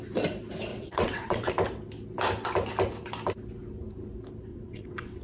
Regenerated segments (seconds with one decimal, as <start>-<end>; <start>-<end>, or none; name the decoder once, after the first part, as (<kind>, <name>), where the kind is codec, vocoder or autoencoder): 0.7-1.5 (vocoder, WaveNeXt); 4.5-5.2